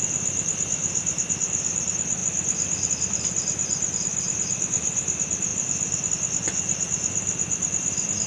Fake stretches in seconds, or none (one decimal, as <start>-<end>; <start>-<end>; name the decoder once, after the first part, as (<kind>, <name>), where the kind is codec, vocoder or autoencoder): none